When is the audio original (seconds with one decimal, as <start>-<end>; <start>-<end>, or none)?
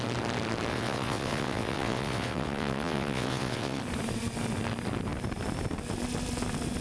0.0-0.7; 3.8-6.8